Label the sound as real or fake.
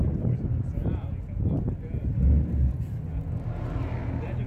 real